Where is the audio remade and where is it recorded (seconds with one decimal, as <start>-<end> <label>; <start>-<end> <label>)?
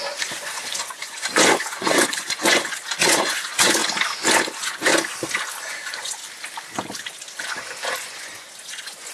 0.0-3.8 remade; 3.8-4.4 recorded; 4.4-4.9 remade; 4.9-5.7 recorded; 5.7-6.2 remade; 6.2-8.0 recorded; 8.0-9.1 remade